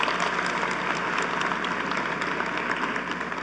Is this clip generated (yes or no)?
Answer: no